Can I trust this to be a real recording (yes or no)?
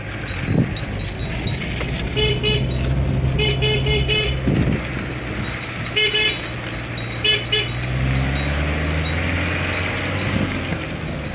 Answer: yes